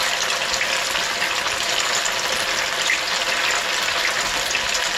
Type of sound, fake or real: real